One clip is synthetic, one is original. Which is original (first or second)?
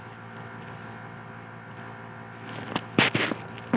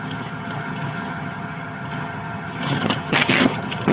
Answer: first